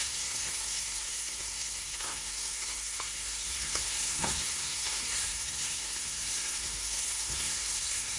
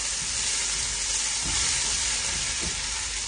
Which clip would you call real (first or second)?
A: second